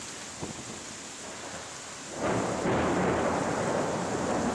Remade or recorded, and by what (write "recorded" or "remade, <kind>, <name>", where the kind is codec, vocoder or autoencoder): recorded